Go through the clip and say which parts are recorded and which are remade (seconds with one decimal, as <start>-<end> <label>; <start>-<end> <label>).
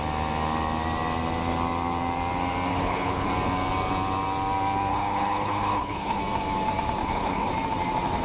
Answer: 0.0-2.7 recorded; 2.7-3.3 remade; 3.3-4.9 recorded; 4.9-6.2 remade; 6.2-7.0 recorded; 7.0-7.5 remade; 7.5-8.2 recorded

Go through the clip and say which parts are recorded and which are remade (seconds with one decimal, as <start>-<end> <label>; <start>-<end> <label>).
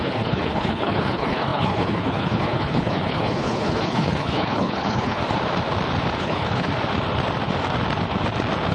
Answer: 0.0-5.2 remade; 5.2-6.2 recorded; 6.2-6.7 remade; 6.7-8.7 recorded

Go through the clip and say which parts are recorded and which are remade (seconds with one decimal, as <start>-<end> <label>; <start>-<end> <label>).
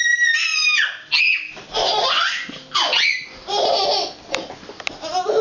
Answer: 0.0-5.4 recorded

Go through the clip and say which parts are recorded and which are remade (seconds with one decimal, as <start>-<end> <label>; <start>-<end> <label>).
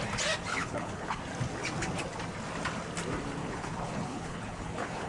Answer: 0.0-0.5 recorded; 0.5-1.2 remade; 1.2-3.4 recorded; 3.4-5.1 remade